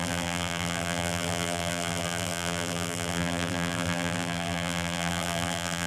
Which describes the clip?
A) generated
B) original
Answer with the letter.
A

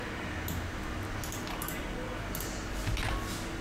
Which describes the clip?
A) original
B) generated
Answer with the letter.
A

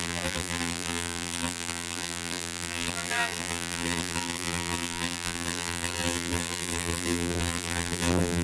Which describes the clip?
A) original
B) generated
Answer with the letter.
B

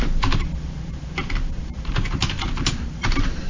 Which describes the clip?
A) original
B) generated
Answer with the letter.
B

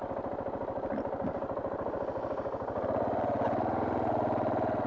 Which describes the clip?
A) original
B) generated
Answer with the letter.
A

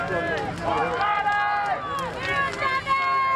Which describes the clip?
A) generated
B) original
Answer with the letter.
B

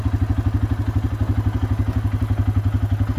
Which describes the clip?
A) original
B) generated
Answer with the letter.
A